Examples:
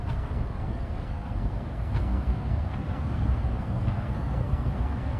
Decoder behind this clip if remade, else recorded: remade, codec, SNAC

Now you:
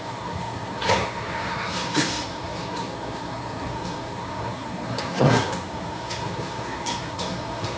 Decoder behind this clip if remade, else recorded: remade, codec, SNAC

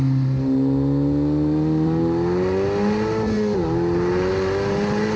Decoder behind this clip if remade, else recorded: recorded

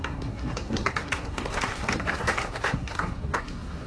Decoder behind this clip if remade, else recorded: remade, codec, SNAC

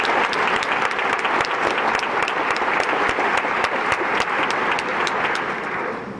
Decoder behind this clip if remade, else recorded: recorded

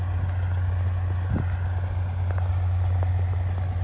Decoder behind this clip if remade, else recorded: recorded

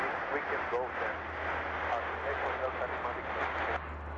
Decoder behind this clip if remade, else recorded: recorded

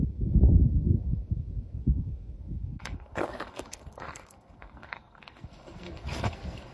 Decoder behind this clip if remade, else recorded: remade, codec, SNAC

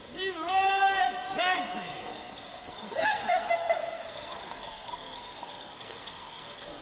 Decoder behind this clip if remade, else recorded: remade, codec, SNAC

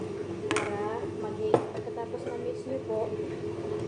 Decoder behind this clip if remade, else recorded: recorded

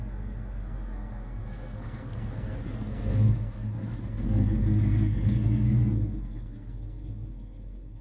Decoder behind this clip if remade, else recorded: remade, codec, SNAC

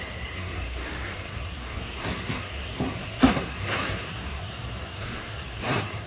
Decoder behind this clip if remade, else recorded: remade, codec, SNAC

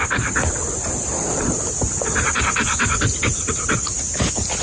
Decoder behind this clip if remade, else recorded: recorded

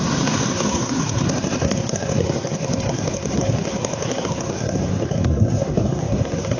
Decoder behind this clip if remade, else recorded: remade, codec, SNAC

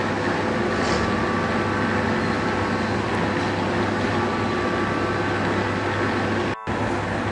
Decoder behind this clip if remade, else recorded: recorded